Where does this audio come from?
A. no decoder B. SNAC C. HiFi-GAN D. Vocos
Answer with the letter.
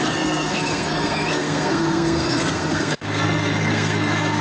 B